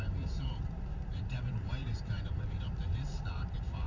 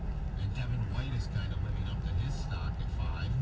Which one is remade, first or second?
first